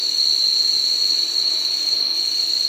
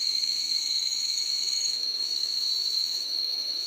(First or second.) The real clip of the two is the first